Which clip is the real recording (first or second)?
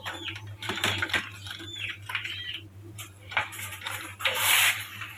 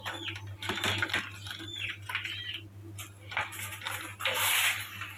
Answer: second